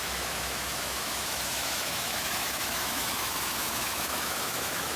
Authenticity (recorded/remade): remade